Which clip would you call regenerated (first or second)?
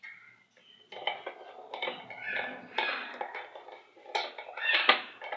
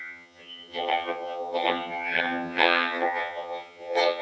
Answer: second